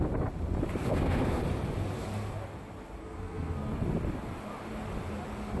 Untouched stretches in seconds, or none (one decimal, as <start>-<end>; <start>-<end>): 0.0-0.8; 1.4-3.0; 3.7-5.6